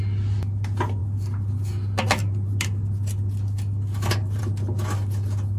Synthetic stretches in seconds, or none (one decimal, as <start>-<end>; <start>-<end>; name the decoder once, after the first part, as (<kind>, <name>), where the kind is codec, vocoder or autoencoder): none